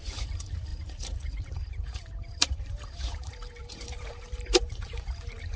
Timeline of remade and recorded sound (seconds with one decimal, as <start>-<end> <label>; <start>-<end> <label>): 0.0-5.6 remade